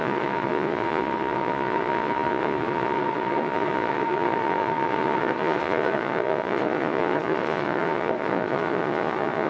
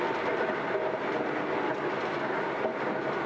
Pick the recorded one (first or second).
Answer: second